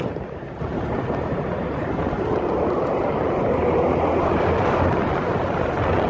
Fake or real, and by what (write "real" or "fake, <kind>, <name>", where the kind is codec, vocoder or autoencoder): real